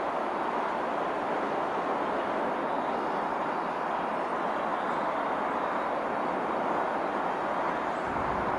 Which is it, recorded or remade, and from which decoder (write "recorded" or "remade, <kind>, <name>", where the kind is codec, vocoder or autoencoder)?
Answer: recorded